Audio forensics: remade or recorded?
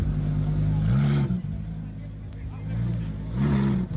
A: recorded